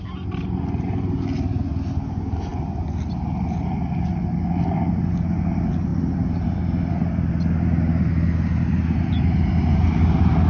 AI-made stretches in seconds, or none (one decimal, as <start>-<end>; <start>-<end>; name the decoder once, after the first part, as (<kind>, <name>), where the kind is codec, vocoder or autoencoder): none